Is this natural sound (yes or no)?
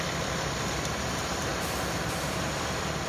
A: no